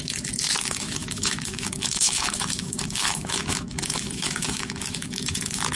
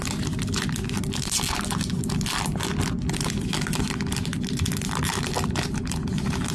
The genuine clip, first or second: second